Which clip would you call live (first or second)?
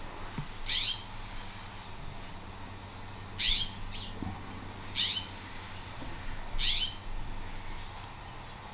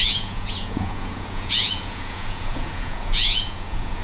first